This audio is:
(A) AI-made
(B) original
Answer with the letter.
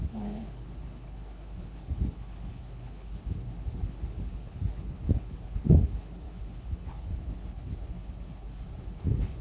A